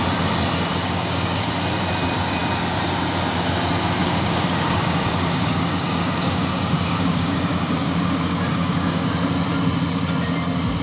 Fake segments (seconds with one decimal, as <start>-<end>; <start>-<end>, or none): 0.7-1.5; 4.0-9.1